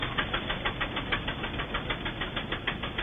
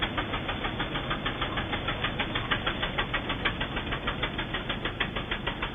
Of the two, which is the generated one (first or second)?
first